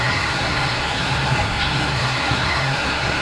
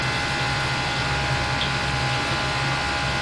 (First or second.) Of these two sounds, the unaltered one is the second